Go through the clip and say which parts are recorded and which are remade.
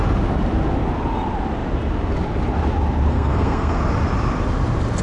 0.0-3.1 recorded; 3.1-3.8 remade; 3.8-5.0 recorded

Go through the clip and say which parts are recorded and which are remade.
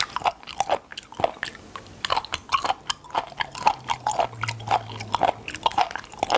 0.0-6.4 recorded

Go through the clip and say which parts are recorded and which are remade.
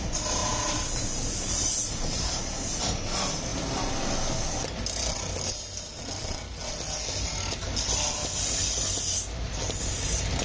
0.0-0.4 recorded; 0.4-2.6 remade; 2.6-3.5 recorded; 3.5-4.0 remade; 4.0-10.4 recorded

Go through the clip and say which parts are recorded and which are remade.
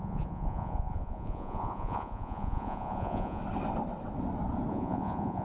0.0-3.4 remade; 3.4-4.7 recorded; 4.7-5.4 remade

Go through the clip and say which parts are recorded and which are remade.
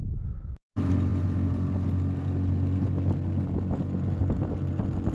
0.0-5.1 recorded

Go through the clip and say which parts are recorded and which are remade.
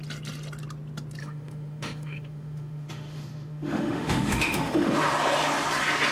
0.0-1.2 recorded; 1.2-4.9 remade; 4.9-6.1 recorded